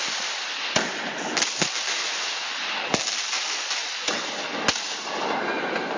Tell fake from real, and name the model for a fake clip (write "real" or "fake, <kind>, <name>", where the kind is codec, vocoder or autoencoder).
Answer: real